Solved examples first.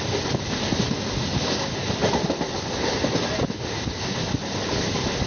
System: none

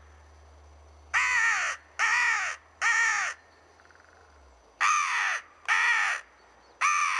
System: none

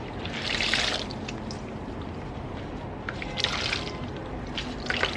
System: none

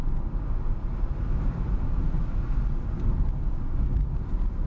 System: none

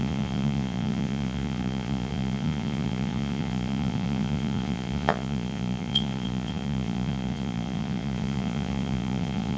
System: vocoder, Vocos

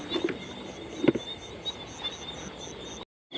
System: none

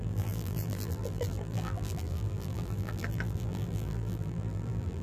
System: vocoder, BigVGAN v2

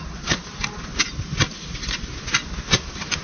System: none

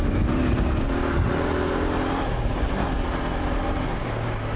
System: none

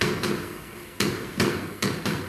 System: codec, SNAC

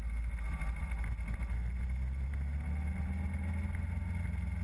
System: none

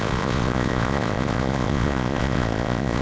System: vocoder, Vocos